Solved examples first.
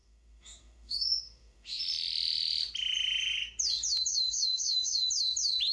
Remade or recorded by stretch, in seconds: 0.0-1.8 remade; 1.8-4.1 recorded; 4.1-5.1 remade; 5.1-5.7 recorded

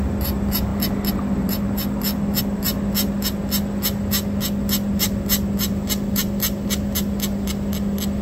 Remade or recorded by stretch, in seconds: 0.0-8.2 recorded

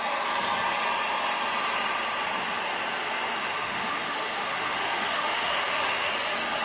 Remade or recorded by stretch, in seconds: 0.0-3.4 recorded; 3.4-6.1 remade; 6.1-6.6 recorded

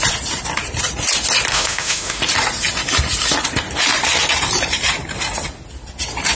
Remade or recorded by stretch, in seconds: 0.0-1.5 recorded; 1.5-2.2 remade; 2.2-6.3 recorded

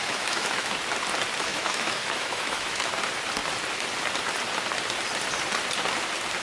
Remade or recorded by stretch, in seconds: 0.0-0.7 remade; 0.7-1.5 recorded; 1.5-2.9 remade; 2.9-6.4 recorded

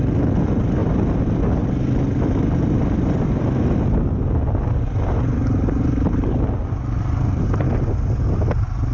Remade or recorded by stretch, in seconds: 0.0-8.9 recorded

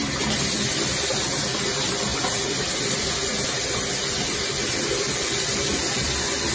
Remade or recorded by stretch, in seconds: 0.0-6.5 recorded

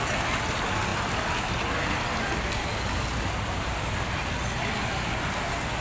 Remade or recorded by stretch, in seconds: 0.0-5.8 recorded